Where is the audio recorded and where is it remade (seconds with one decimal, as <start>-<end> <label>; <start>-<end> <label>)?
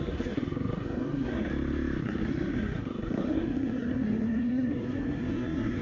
0.0-1.5 remade; 1.5-2.0 recorded; 2.0-5.8 remade